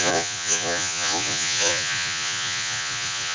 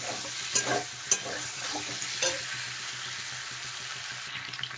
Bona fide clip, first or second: second